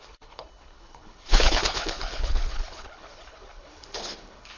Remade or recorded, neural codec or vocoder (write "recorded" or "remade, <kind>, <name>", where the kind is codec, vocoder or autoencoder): remade, codec, HILCodec